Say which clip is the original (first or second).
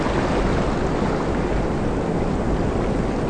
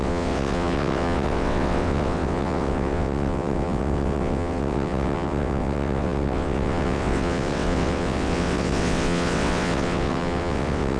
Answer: first